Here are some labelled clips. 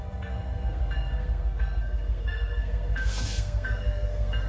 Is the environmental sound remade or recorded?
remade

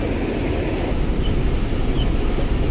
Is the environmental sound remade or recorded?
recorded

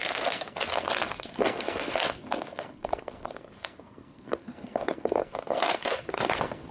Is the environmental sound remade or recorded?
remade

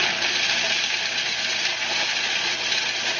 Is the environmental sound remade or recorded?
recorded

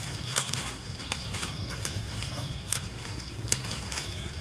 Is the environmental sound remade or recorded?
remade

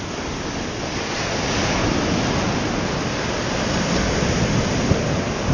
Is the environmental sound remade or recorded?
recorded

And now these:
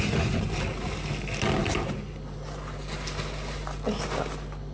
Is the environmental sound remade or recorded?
recorded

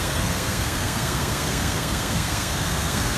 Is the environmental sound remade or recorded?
remade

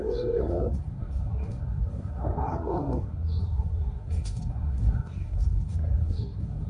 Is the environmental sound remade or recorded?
remade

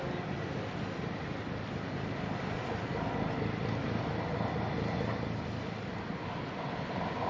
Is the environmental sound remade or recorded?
recorded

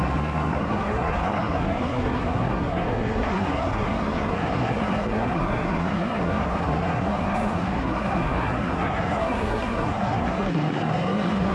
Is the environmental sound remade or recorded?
remade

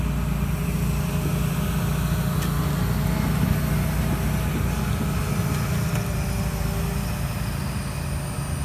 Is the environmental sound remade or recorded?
recorded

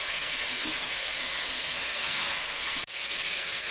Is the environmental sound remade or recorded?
remade